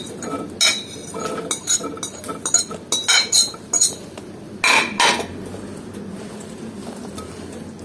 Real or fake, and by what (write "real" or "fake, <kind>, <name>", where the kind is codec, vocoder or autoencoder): real